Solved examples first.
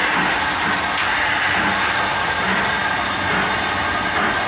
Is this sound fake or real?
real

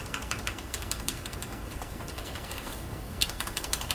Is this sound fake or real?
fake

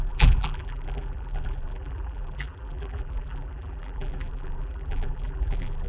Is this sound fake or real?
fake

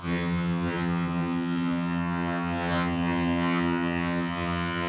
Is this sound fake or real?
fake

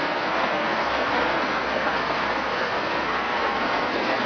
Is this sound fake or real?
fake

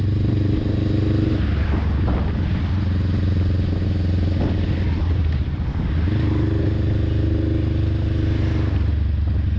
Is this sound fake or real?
real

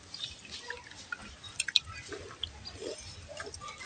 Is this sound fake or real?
real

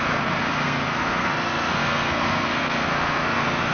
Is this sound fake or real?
fake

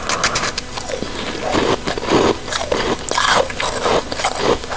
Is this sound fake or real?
real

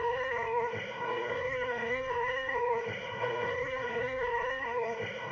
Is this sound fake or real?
fake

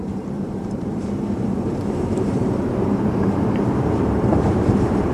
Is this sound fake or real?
fake